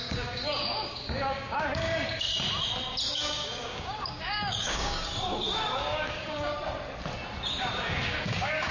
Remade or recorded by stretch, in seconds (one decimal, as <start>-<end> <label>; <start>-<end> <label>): 0.0-2.3 remade; 2.3-3.1 recorded; 3.1-6.5 remade; 6.5-7.5 recorded; 7.5-8.7 remade